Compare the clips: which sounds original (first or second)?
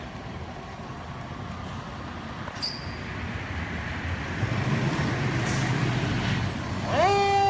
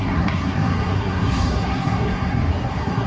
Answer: first